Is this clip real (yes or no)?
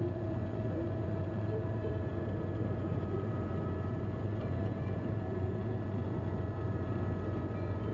no